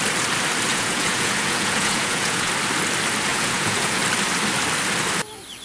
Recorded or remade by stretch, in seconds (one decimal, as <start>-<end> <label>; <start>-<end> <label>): 0.0-0.7 recorded; 0.7-2.5 remade; 2.5-3.3 recorded; 3.3-4.0 remade; 4.0-5.6 recorded